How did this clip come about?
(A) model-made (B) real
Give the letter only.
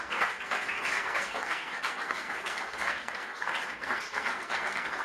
A